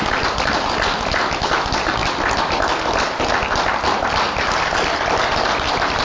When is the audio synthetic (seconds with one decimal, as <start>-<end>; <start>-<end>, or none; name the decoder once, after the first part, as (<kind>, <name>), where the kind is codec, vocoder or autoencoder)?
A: none